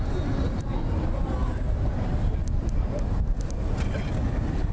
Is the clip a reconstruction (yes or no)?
no